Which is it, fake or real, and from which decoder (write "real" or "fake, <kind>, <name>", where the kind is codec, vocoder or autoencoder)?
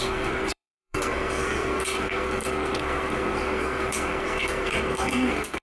fake, codec, SNAC